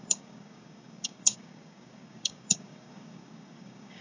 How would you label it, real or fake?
fake